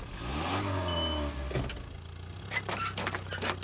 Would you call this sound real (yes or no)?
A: yes